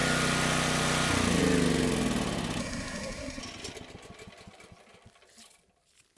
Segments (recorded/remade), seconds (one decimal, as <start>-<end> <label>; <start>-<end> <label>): 0.0-2.6 recorded; 2.6-3.4 remade; 3.4-6.2 recorded